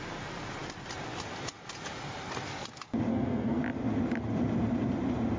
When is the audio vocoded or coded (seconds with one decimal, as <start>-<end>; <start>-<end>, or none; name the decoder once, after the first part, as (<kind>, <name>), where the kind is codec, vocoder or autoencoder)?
3.1-3.6 (codec, SNAC)